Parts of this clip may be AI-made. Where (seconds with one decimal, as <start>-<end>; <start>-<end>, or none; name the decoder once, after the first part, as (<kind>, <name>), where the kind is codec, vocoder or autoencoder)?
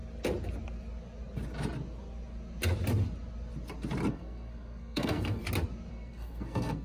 4.1-5.4 (codec, SNAC); 5.9-6.8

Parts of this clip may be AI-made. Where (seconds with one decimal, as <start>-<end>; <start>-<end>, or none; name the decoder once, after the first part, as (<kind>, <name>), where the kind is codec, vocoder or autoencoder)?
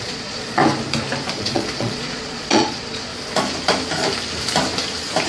0.0-0.6 (vocoder, Vocos); 1.3-3.1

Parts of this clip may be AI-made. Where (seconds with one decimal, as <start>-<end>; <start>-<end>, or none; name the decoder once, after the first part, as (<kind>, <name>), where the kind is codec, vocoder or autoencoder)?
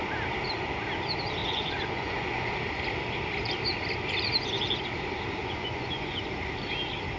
1.4-2.5 (vocoder, Vocos); 5.4-6.2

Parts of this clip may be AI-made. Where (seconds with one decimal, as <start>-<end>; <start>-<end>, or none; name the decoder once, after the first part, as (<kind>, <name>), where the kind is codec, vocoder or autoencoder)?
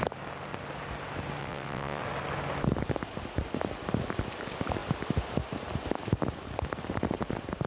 1.4-2.0 (vocoder, WaveNeXt)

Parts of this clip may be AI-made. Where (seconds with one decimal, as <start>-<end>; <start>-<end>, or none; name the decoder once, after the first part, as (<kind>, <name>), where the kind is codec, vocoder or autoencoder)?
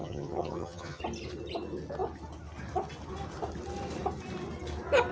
0.0-1.0 (vocoder, HiFi-GAN)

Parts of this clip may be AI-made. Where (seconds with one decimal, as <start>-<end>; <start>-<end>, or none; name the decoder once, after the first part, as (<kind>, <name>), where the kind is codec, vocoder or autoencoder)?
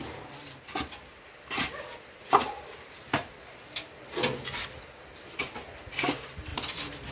none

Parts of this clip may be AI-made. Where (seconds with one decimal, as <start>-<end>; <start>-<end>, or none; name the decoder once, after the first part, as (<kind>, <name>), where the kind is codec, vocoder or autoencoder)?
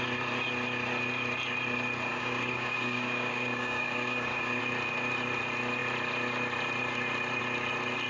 2.1-4.6 (codec, DAC)